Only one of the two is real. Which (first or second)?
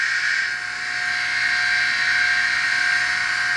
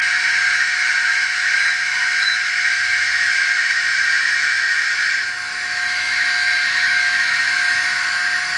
first